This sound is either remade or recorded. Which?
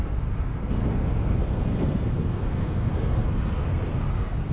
remade